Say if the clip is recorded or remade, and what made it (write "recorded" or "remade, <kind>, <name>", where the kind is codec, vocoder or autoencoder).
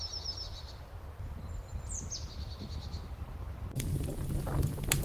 recorded